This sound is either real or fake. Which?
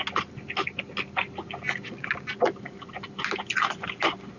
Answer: real